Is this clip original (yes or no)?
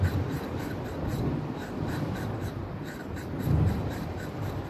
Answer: yes